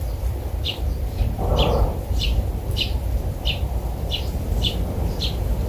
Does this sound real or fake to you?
fake